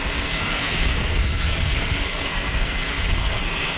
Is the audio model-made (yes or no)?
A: yes